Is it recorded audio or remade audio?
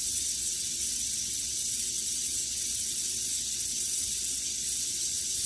remade